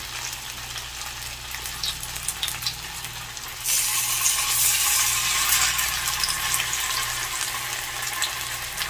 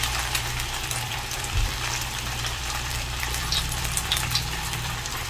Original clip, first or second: first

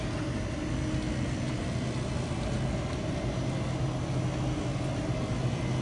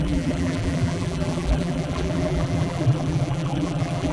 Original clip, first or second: first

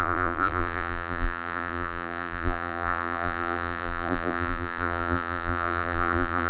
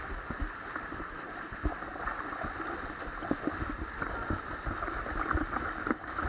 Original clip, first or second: second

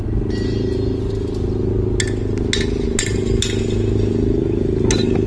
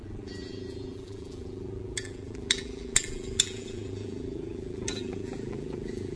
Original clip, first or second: first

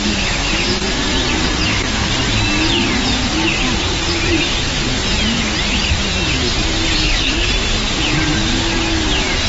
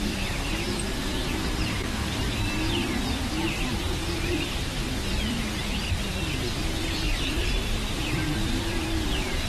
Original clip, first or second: first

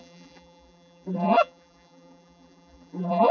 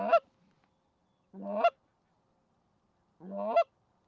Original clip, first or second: second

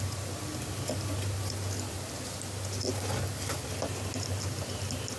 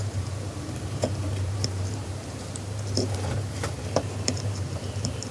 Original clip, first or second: first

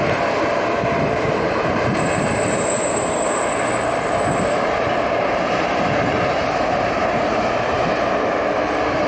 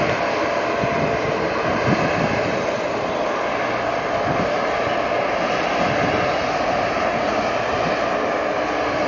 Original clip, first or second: second